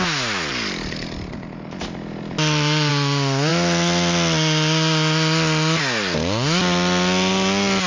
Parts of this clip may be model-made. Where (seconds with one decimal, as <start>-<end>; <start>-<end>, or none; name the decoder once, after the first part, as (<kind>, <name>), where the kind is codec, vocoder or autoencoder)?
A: none